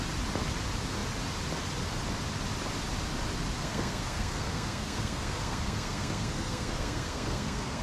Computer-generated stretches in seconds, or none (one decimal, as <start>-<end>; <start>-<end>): 3.6-7.8